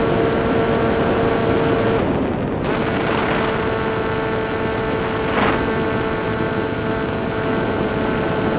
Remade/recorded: recorded